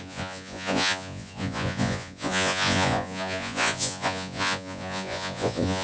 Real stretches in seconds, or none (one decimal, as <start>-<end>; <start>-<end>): none